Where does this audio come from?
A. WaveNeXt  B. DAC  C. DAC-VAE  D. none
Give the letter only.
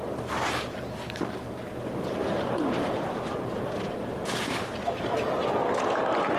D